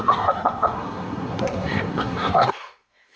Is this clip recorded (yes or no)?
no